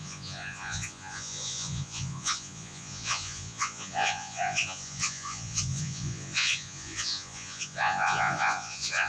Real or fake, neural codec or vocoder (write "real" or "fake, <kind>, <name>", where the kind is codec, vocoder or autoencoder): fake, vocoder, Vocos